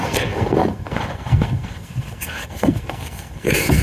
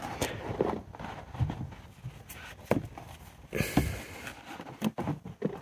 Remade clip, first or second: first